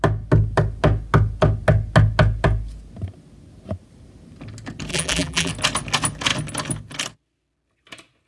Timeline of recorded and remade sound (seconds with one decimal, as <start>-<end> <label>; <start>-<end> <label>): 0.0-4.9 recorded; 4.9-5.5 remade; 5.5-8.3 recorded